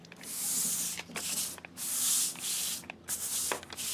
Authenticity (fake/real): real